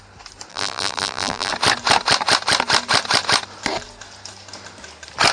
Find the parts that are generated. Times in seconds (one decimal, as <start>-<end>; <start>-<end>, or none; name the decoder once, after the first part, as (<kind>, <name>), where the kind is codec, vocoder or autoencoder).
0.5-1.5 (vocoder, BigVGAN v2)